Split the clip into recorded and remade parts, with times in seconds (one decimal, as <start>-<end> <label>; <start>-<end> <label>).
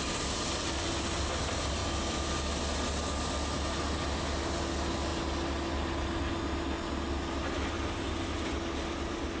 0.0-9.4 recorded